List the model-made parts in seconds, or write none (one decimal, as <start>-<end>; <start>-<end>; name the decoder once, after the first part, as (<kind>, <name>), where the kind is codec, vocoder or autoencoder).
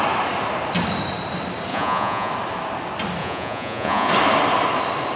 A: 1.7-2.3 (vocoder, Vocos); 3.2-4.1